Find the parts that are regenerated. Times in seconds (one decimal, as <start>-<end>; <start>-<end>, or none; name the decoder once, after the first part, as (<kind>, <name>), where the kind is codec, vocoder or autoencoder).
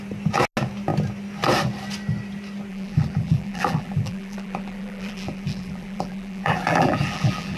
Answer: 2.7-7.6 (vocoder, BigVGAN v2)